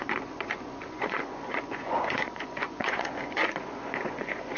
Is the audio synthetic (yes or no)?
yes